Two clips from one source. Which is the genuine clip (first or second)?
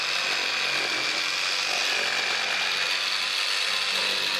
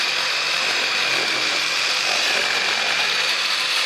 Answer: first